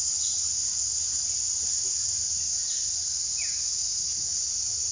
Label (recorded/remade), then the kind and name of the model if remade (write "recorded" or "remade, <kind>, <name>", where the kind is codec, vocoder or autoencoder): recorded